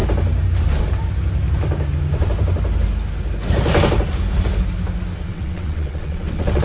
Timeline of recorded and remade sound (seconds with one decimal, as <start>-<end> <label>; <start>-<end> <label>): 0.0-5.3 recorded; 5.3-6.6 remade

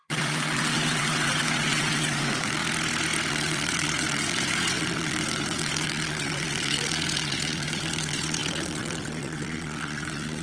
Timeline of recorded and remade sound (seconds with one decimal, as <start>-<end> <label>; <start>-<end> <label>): 0.0-2.6 remade; 2.6-3.3 recorded; 3.3-10.4 remade

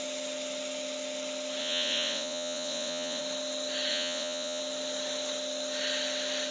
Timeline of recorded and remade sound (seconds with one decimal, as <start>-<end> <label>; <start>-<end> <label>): 0.0-1.6 recorded; 1.6-3.2 remade; 3.2-3.9 recorded; 3.9-4.6 remade; 4.6-6.5 recorded

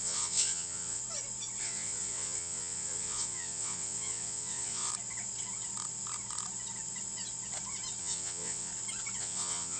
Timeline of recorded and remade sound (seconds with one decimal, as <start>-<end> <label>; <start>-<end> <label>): 0.0-1.0 remade; 1.0-1.6 recorded; 1.6-4.9 remade; 4.9-8.0 recorded; 8.0-8.7 remade; 8.7-9.2 recorded; 9.2-9.8 remade

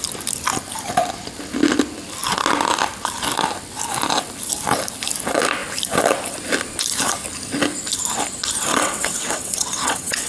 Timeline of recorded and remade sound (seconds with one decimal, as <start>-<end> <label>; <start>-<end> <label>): 0.0-8.7 recorded; 8.7-10.3 remade

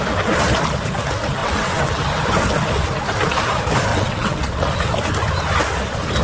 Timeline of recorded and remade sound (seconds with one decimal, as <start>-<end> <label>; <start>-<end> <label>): 0.0-1.4 recorded; 1.4-2.0 remade; 2.0-3.9 recorded; 3.9-4.7 remade; 4.7-6.2 recorded

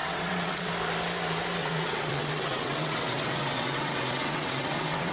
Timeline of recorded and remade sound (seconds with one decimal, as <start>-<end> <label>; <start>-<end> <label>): 0.0-0.7 remade; 0.7-1.6 recorded; 1.6-5.1 remade

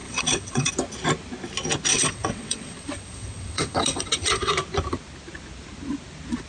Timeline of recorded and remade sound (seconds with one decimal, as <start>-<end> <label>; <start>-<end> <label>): 0.0-0.7 remade; 0.7-1.9 recorded; 1.9-4.5 remade; 4.5-6.5 recorded